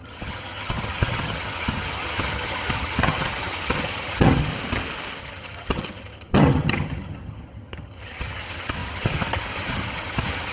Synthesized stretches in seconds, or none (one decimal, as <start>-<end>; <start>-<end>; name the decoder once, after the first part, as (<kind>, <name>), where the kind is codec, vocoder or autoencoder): 0.0-4.5 (vocoder, HiFi-GAN); 5.2-10.5